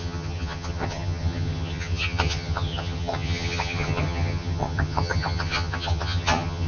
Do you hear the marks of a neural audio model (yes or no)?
yes